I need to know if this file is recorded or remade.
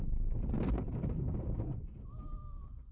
recorded